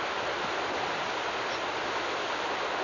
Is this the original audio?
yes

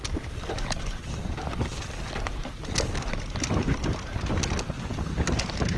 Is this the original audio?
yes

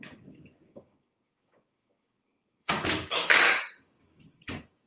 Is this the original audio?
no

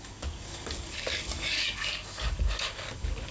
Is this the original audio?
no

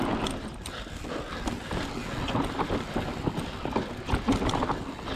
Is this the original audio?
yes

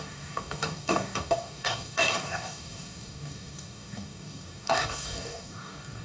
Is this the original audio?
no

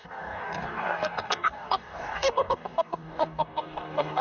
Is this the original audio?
no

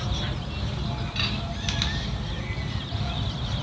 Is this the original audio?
yes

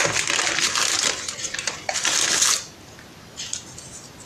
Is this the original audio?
yes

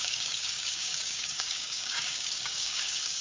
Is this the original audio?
no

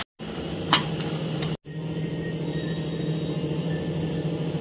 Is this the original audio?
yes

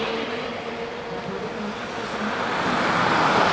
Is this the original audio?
yes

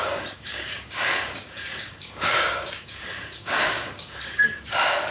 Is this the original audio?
no